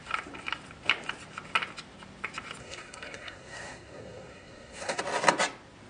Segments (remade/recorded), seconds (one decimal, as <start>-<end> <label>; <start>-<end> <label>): 0.0-2.6 recorded; 2.6-5.0 remade; 5.0-5.9 recorded